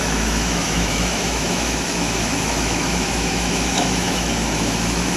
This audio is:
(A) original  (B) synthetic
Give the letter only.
B